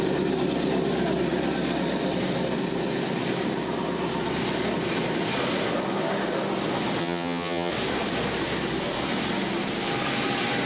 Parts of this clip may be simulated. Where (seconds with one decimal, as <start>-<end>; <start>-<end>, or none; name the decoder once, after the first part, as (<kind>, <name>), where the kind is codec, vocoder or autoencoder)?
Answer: 7.0-7.7 (vocoder, HiFi-GAN)